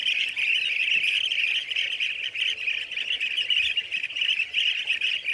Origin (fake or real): real